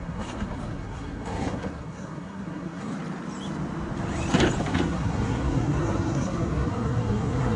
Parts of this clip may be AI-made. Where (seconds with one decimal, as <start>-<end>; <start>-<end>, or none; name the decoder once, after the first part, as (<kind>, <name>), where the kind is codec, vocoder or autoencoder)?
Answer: 0.0-2.9 (codec, SNAC); 4.6-7.6